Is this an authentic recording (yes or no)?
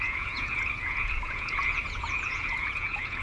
no